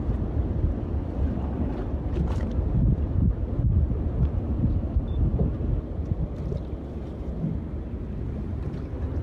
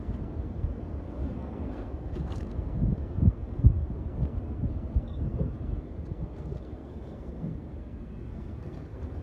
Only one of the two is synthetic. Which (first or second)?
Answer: second